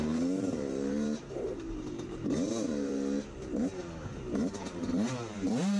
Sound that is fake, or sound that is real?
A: fake